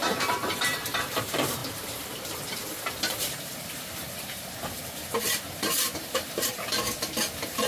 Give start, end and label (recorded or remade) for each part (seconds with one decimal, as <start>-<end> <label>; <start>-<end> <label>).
0.0-7.7 remade